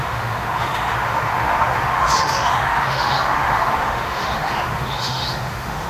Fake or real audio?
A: fake